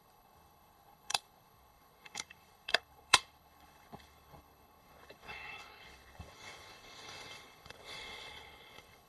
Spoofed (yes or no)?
yes